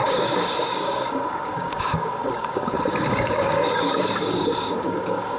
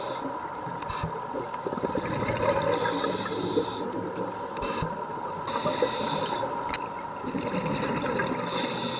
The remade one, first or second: first